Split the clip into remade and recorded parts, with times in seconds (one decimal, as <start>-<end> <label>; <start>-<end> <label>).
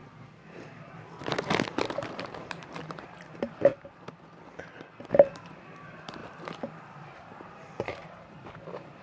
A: 0.0-1.9 recorded; 1.9-3.7 remade; 3.7-5.1 recorded; 5.1-6.2 remade; 6.2-7.0 recorded; 7.0-9.0 remade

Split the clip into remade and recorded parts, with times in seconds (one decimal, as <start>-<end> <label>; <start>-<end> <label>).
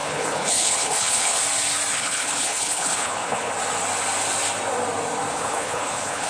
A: 0.0-1.4 remade; 1.4-1.9 recorded; 1.9-3.5 remade; 3.5-5.3 recorded; 5.3-6.3 remade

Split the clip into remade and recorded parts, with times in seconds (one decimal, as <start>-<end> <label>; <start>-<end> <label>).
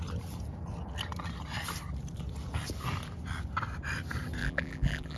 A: 0.0-4.4 recorded; 4.4-5.2 remade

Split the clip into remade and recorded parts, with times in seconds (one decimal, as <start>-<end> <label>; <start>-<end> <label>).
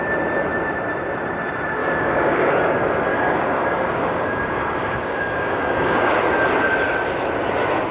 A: 0.0-1.8 recorded; 1.8-2.6 remade; 2.6-3.1 recorded; 3.1-6.1 remade; 6.1-7.9 recorded